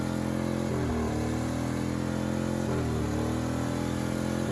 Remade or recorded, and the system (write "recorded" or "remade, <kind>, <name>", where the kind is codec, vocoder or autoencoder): recorded